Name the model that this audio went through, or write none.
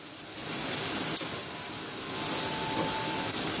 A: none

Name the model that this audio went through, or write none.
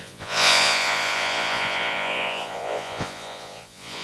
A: vocoder, Vocos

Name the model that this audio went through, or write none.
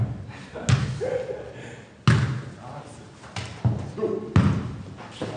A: none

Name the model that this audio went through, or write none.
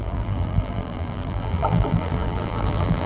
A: vocoder, BigVGAN v2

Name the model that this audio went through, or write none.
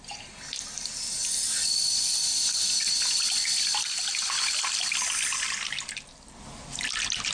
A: none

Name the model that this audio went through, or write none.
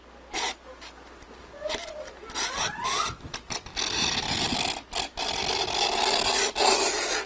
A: none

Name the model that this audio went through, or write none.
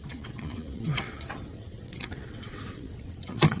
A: vocoder, WaveNeXt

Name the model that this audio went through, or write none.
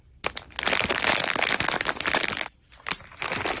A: none